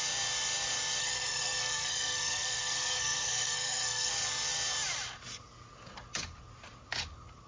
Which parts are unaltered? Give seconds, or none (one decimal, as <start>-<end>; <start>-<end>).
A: 0.0-1.0; 4.1-7.5